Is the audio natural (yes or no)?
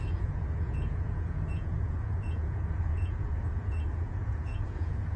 no